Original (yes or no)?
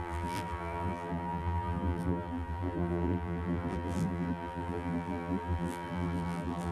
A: no